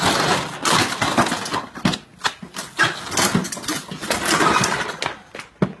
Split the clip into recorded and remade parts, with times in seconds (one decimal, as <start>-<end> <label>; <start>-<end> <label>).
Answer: 0.0-5.8 recorded